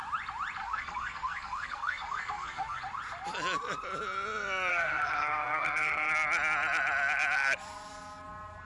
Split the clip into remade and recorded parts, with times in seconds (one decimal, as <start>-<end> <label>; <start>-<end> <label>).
0.0-0.6 recorded; 0.6-2.8 remade; 2.8-4.7 recorded; 4.7-6.1 remade; 6.1-8.6 recorded